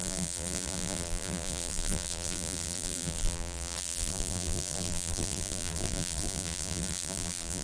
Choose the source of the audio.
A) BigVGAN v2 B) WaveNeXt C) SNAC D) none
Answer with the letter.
A